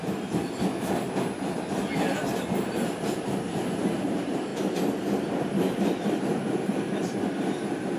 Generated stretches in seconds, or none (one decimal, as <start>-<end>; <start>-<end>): 4.5-6.2; 7.0-8.0